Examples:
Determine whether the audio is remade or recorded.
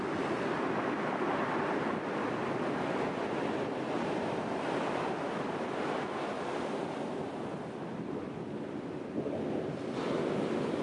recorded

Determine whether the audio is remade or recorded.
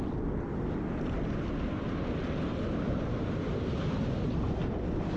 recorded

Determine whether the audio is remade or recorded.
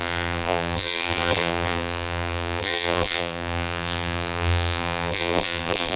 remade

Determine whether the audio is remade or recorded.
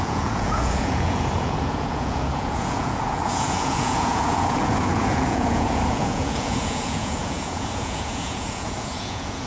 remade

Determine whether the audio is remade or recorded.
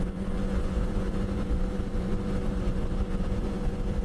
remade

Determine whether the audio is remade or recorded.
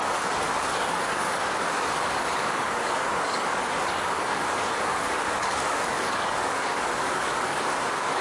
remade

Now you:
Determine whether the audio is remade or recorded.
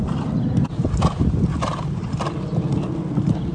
recorded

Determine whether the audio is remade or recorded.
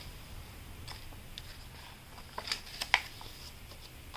recorded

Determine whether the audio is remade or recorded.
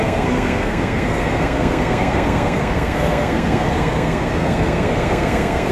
remade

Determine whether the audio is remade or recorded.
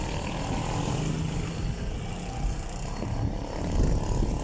recorded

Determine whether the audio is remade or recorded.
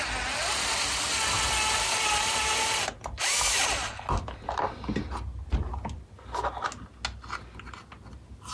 recorded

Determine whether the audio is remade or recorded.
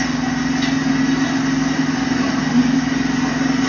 recorded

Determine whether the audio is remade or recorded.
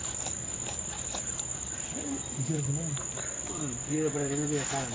recorded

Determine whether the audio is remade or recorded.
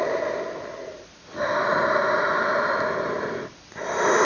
recorded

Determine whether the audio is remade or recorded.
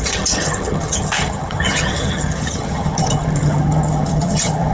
remade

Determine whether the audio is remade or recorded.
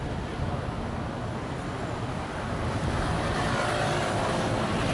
recorded